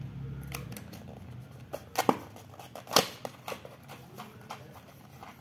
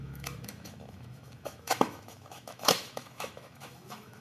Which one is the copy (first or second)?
second